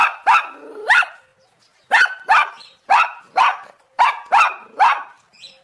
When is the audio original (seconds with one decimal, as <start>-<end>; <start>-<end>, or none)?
0.0-5.6